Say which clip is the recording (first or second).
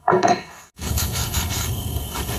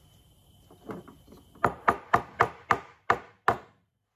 second